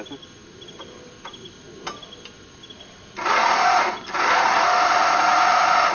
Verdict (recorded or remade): recorded